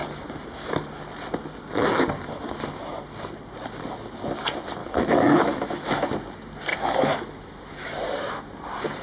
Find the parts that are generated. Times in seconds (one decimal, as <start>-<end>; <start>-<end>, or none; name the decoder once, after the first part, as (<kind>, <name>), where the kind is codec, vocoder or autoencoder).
4.8-6.1 (autoencoder, DAC-VAE); 6.7-8.0